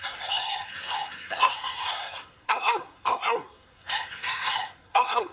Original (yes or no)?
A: no